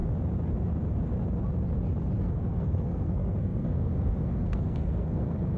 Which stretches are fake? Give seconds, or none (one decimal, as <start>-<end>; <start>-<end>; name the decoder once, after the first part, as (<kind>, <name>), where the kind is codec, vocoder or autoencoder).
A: 2.2-5.6 (codec, SNAC)